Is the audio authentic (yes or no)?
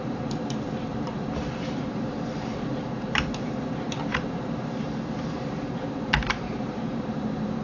no